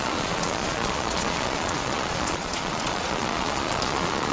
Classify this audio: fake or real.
fake